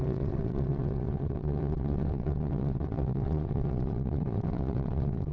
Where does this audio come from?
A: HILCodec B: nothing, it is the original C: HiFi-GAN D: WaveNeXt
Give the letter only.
D